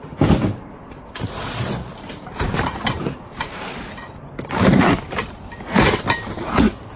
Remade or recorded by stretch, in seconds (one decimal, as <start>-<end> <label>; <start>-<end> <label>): 0.0-1.8 recorded; 1.8-6.0 remade; 6.0-7.0 recorded